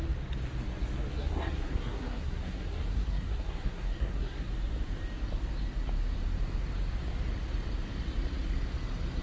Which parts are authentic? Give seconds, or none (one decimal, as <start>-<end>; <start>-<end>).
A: 0.0-1.2; 4.5-9.2

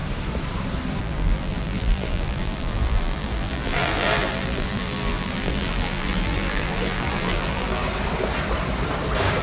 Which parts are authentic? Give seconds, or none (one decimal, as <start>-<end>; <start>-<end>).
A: 0.0-1.0; 7.8-9.4

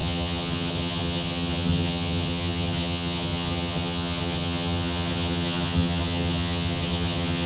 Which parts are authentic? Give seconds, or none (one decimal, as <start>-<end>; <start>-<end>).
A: none